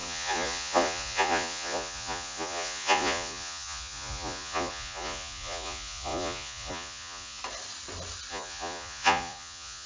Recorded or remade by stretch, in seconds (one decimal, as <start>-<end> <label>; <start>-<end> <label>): 0.0-7.4 remade; 7.4-8.3 recorded; 8.3-9.9 remade